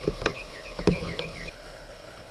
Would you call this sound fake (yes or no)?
yes